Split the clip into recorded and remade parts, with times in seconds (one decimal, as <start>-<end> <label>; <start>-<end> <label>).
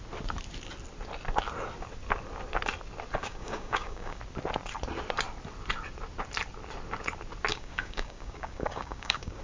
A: 0.0-3.2 recorded; 3.2-4.2 remade; 4.2-7.5 recorded; 7.5-9.4 remade